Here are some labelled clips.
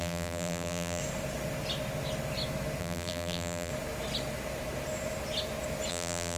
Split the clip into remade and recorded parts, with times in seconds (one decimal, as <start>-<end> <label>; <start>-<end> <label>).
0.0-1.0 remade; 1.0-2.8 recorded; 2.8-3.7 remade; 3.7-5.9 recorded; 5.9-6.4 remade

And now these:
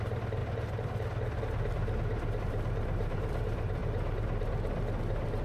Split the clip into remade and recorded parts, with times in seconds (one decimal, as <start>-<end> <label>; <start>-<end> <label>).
0.0-0.4 remade; 0.4-2.4 recorded; 2.4-3.8 remade; 3.8-5.0 recorded; 5.0-5.4 remade

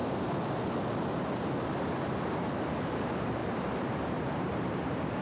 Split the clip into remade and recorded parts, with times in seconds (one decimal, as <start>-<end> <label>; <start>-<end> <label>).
0.0-1.1 recorded; 1.1-5.2 remade

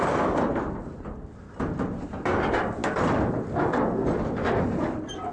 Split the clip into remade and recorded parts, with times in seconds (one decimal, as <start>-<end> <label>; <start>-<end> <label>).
0.0-5.3 recorded

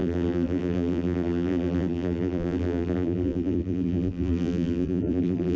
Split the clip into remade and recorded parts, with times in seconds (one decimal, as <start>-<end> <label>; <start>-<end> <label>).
0.0-5.6 remade